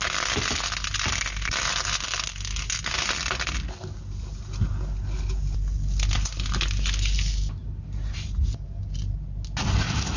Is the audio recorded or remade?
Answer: recorded